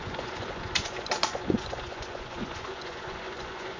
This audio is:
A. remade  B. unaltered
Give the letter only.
A